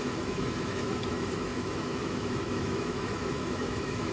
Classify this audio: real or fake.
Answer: fake